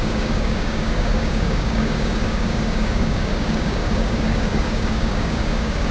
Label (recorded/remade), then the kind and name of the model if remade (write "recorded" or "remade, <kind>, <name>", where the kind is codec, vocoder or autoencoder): remade, codec, DAC